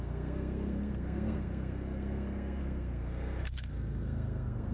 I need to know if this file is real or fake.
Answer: fake